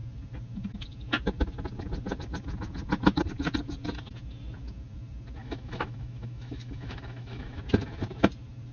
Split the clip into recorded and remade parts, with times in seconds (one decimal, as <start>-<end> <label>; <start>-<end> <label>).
0.0-5.4 recorded; 5.4-7.6 remade; 7.6-8.7 recorded